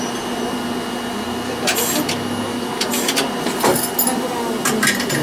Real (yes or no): yes